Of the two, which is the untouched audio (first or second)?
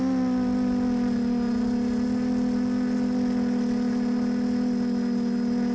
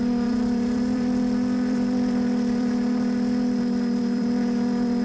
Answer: first